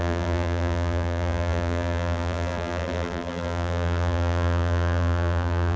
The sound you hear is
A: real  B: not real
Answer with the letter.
B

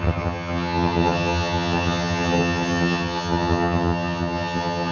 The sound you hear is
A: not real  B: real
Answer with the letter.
A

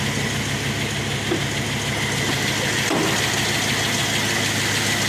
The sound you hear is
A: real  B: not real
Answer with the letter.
A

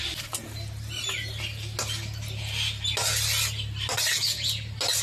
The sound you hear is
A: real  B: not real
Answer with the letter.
A